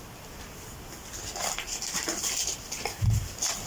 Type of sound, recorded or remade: recorded